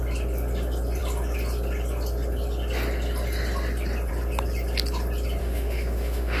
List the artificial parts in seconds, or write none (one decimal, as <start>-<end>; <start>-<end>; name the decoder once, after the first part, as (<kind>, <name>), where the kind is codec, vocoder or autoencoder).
5.4-6.4 (autoencoder, DAC-VAE)